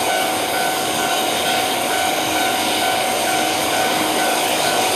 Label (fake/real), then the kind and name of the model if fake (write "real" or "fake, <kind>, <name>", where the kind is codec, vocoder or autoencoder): fake, codec, DAC